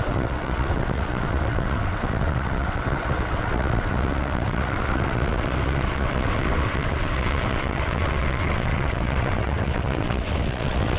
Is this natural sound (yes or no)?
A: no